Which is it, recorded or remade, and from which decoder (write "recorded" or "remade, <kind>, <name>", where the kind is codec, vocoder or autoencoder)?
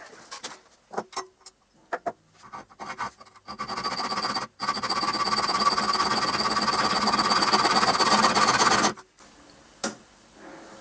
recorded